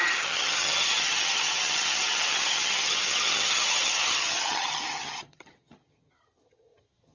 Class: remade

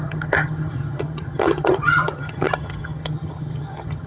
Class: remade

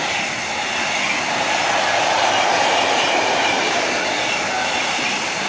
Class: recorded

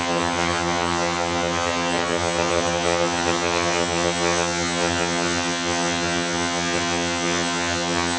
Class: remade